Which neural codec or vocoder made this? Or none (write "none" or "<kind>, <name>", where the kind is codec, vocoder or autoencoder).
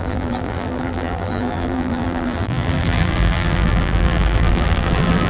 vocoder, BigVGAN v2